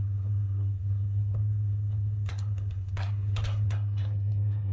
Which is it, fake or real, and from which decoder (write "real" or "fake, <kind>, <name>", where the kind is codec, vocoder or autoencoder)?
fake, codec, SNAC